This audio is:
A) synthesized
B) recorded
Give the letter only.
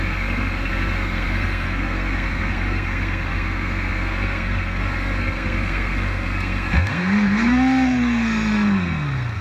A